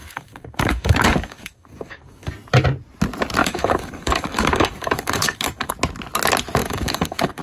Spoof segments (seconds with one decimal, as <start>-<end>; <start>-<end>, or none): 0.0-2.3; 3.4-5.7; 6.6-7.4